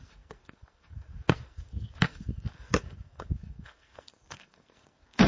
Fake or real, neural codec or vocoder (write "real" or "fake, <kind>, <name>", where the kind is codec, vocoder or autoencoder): fake, codec, SNAC